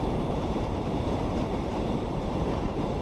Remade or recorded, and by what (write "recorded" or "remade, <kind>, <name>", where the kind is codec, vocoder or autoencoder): remade, vocoder, BigVGAN v2